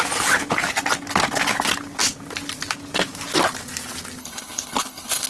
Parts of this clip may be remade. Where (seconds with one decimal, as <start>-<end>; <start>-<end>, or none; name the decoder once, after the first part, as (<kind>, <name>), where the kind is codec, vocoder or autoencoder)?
4.2-5.3 (codec, HILCodec)